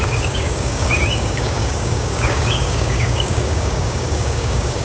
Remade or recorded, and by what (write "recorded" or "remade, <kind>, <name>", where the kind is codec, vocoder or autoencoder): remade, codec, DAC